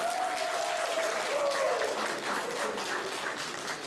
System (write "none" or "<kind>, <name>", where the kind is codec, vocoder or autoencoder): none